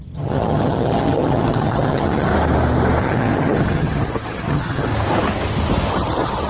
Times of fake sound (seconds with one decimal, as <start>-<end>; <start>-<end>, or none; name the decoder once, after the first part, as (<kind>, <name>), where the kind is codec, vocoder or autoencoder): 0.0-2.3 (vocoder, HiFi-GAN); 3.0-4.9; 5.9-6.5